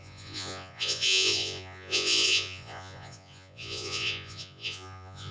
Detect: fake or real fake